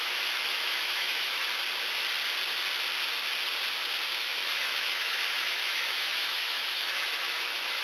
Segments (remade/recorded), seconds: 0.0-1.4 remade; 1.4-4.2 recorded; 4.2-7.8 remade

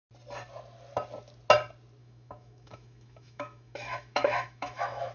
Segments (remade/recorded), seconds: 0.0-2.0 recorded; 2.0-5.1 remade

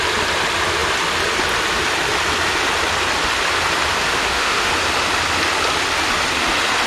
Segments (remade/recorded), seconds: 0.0-4.1 recorded; 4.1-4.7 remade; 4.7-6.9 recorded

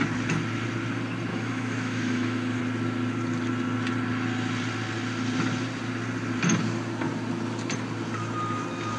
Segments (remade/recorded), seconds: 0.0-1.3 recorded; 1.3-2.6 remade; 2.6-9.0 recorded

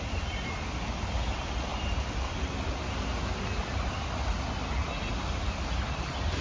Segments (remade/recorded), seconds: 0.0-6.4 recorded

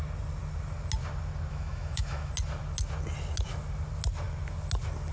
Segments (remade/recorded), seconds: 0.0-1.5 recorded; 1.5-2.3 remade; 2.3-5.1 recorded

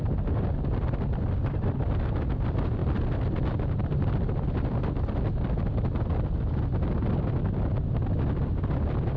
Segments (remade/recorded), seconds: 0.0-9.2 recorded

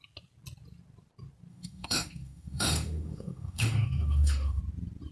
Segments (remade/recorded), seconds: 0.0-1.5 recorded; 1.5-4.6 remade; 4.6-5.1 recorded